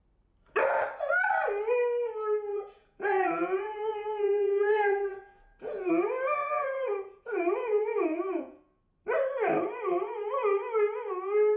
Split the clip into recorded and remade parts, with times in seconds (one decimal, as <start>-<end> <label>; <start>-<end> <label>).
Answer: 0.0-2.5 recorded; 2.5-5.9 remade; 5.9-6.4 recorded; 6.4-8.8 remade; 8.8-11.6 recorded